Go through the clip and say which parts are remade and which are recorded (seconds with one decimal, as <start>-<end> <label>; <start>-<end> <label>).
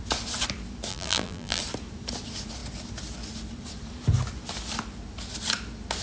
0.0-0.9 recorded; 0.9-1.6 remade; 1.6-6.0 recorded